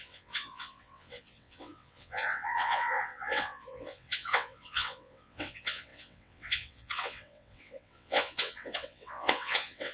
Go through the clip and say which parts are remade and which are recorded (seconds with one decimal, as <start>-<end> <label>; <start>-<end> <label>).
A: 0.0-9.9 remade